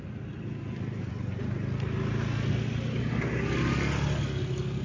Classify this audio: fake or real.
real